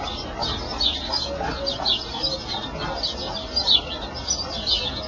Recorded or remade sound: recorded